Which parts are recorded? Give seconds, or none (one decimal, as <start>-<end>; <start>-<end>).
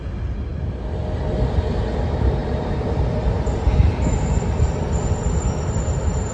0.0-2.4